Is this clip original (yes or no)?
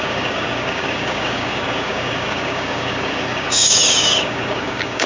no